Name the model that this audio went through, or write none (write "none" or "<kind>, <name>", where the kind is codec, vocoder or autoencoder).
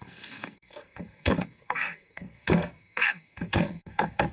codec, SNAC